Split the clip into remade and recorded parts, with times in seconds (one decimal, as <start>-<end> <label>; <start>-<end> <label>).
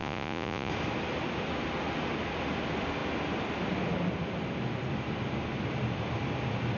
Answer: 0.0-0.7 remade; 0.7-6.8 recorded